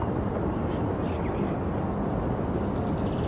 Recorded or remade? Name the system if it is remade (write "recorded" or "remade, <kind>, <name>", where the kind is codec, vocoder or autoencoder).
recorded